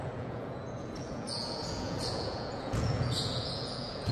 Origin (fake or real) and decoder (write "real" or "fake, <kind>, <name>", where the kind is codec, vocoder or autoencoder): fake, vocoder, Vocos